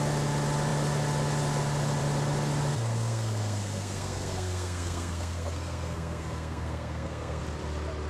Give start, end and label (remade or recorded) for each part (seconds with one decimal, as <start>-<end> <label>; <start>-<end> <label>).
0.0-2.7 recorded; 2.7-7.4 remade; 7.4-8.1 recorded